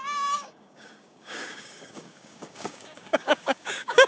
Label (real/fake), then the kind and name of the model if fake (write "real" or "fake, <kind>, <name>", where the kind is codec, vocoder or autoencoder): fake, codec, DAC